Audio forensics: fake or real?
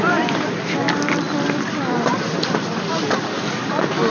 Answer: real